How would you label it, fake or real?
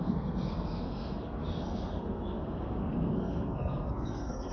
fake